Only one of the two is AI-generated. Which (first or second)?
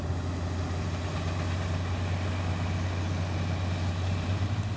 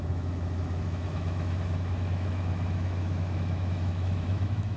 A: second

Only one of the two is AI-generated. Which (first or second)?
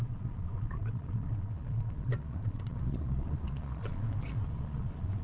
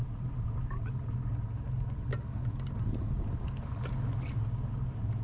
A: first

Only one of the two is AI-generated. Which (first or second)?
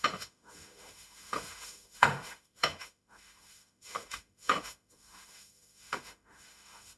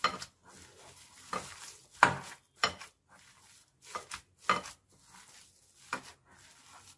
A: first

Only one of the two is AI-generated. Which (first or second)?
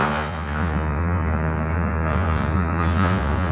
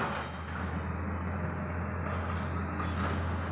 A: first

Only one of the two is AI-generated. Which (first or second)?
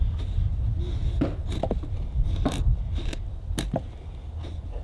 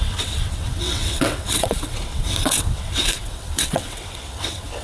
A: second